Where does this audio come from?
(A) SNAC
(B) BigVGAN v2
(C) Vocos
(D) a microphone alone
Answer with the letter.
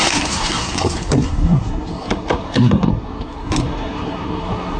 A